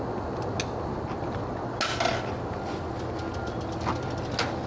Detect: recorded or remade recorded